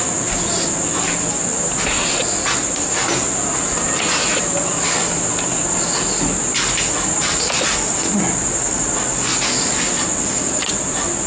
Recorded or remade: recorded